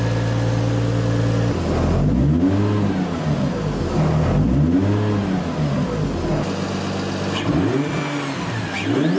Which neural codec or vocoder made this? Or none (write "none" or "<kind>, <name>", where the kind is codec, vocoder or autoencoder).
none